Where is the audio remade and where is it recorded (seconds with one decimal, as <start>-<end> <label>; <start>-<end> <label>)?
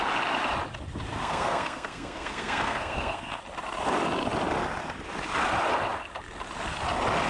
0.0-1.2 recorded; 1.2-3.4 remade; 3.4-7.3 recorded